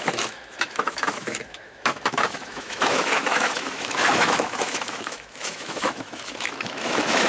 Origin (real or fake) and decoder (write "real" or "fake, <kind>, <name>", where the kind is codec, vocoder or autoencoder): fake, autoencoder, DAC-VAE